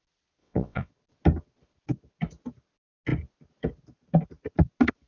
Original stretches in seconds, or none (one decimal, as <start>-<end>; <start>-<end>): 0.0-0.4; 0.9-5.1